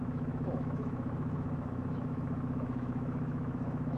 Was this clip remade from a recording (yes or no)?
yes